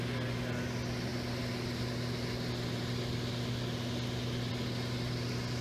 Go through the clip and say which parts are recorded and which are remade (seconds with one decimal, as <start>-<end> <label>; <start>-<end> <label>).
0.0-5.6 recorded